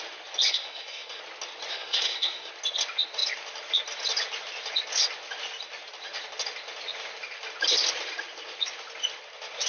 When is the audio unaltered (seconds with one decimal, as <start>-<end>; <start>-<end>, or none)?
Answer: 0.0-0.5; 1.2-1.7; 2.5-9.7